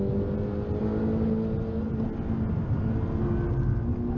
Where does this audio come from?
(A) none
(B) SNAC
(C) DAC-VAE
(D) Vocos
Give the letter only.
A